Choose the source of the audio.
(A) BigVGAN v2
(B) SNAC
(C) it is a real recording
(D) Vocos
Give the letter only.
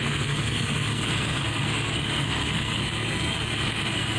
B